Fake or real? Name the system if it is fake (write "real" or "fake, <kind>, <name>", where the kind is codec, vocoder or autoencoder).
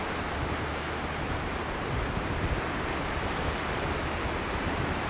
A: real